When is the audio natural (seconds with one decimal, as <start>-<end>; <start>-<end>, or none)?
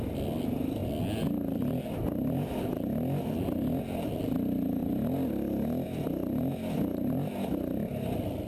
0.0-8.5